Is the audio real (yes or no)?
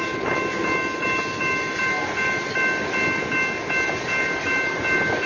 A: yes